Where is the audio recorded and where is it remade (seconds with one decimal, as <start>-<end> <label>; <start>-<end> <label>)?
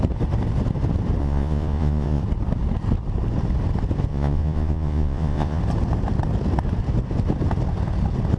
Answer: 0.0-1.2 recorded; 1.2-2.2 remade; 2.2-4.1 recorded; 4.1-5.6 remade; 5.6-8.4 recorded